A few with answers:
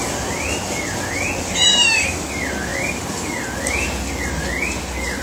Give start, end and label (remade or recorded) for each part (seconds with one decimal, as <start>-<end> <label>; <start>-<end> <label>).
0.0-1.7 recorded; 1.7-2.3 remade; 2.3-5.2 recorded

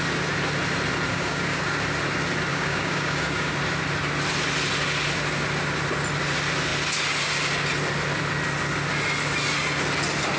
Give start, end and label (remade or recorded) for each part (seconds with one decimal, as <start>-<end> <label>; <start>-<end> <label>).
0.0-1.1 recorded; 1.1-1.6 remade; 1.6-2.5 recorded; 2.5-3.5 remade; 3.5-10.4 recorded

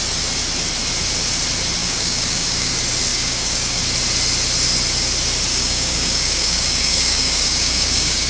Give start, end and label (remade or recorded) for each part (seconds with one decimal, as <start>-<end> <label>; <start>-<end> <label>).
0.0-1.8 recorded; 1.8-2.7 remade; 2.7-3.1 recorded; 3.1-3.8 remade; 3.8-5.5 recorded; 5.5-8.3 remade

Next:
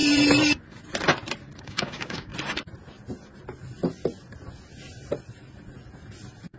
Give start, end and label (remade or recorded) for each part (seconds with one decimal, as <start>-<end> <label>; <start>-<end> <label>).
0.0-1.6 recorded; 1.6-2.3 remade; 2.3-6.6 recorded

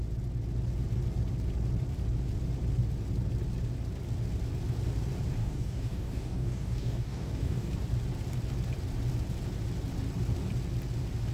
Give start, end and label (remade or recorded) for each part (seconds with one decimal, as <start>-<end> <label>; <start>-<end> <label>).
0.0-5.4 recorded; 5.4-7.7 remade; 7.7-11.3 recorded

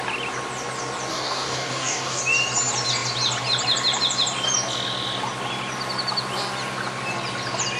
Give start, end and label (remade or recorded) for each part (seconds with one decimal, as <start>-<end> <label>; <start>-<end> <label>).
0.0-1.1 recorded; 1.1-2.2 remade; 2.2-7.8 recorded